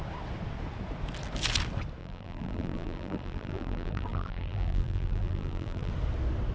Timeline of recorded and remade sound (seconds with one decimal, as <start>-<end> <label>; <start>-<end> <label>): 0.0-2.0 recorded; 2.0-5.9 remade; 5.9-6.5 recorded